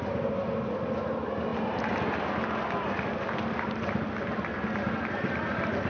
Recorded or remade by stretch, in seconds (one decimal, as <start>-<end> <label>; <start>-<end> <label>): 0.0-5.9 recorded